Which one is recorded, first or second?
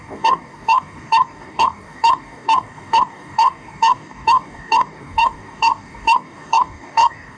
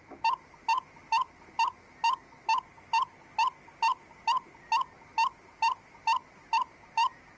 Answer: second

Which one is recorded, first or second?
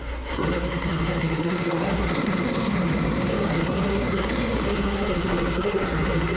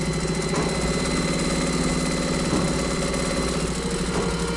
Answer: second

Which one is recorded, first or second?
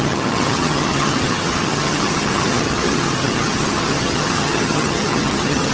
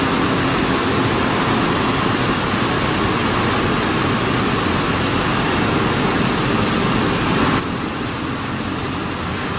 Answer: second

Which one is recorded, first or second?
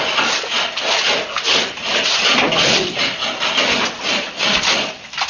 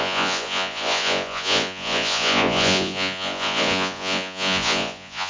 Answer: first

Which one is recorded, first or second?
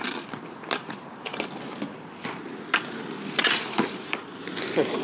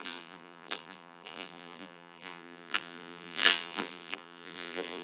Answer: first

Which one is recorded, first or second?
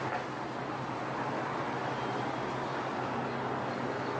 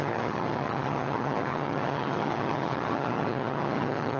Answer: first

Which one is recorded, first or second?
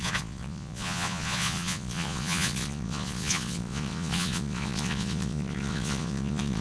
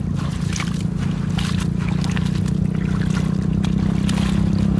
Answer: second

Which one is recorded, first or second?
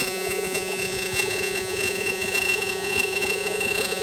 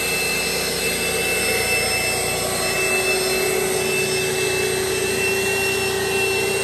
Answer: second